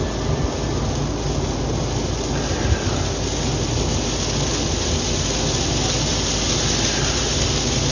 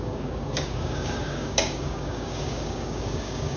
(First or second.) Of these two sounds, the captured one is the first